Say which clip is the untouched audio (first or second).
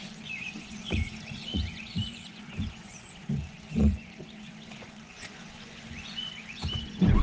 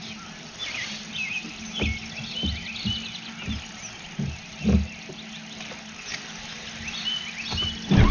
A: second